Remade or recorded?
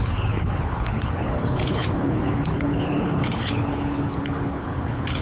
remade